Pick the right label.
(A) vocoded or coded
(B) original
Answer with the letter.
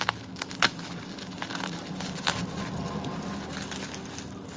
B